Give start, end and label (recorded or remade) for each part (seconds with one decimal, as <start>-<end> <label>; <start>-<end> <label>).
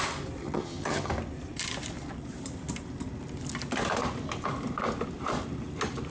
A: 0.0-0.4 recorded; 0.4-1.1 remade; 1.1-6.1 recorded